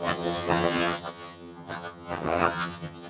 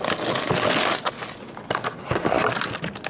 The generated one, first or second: first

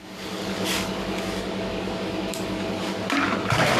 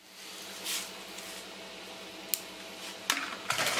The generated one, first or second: first